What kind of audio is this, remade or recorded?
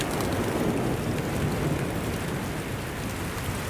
recorded